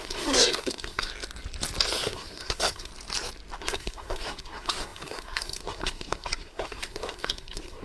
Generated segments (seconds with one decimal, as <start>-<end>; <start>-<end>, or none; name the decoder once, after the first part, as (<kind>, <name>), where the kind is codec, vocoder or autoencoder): 0.0-1.1 (codec, SNAC); 2.0-2.9; 3.6-7.8